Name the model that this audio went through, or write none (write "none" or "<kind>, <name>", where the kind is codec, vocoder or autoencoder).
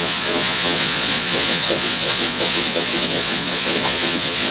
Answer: vocoder, Vocos